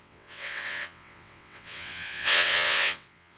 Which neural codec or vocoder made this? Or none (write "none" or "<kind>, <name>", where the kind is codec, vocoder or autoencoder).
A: vocoder, WaveNeXt